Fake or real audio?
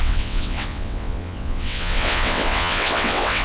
fake